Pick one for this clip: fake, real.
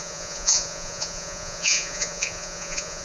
fake